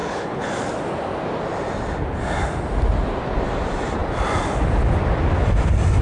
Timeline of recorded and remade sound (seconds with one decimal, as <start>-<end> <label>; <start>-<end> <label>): 0.0-0.5 remade; 0.5-6.0 recorded